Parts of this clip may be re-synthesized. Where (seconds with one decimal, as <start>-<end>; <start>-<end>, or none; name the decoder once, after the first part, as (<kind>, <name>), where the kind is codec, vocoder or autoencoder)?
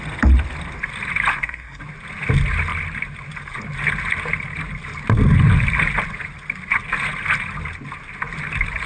1.3-1.8 (codec, SNAC)